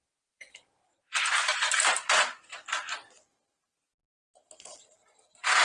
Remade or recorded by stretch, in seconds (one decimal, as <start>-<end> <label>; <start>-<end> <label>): 0.0-2.2 remade; 2.2-5.6 recorded